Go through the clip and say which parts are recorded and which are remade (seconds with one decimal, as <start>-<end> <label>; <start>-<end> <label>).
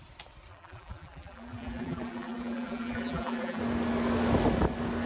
0.0-0.5 recorded; 0.5-3.6 remade; 3.6-5.1 recorded